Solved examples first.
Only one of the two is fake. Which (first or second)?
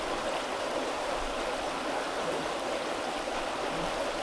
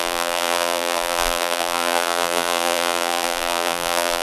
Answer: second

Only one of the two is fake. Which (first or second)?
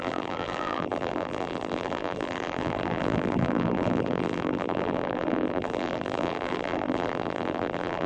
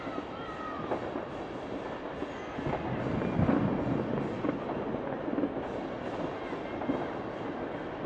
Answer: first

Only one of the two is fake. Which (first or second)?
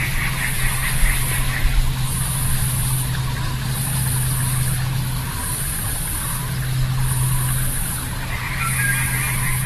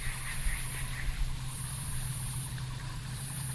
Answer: second